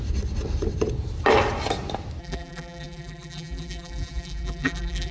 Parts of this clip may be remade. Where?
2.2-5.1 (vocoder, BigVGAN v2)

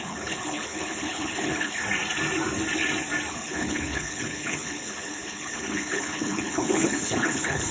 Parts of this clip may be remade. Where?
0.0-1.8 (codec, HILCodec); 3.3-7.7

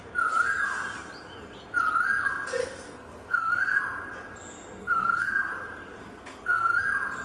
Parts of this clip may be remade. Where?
2.6-3.8 (codec, SNAC); 4.8-5.5; 6.0-6.8

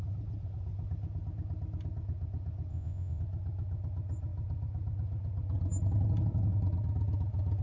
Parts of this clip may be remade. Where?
2.7-3.2 (vocoder, Vocos)

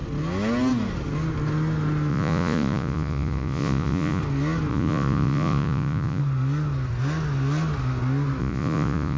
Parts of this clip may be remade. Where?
2.1-4.2 (vocoder, Vocos); 4.7-6.2; 8.4-9.2

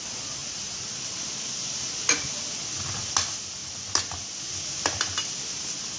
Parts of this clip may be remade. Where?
none